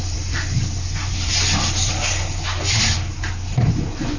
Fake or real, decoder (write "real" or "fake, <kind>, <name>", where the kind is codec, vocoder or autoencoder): real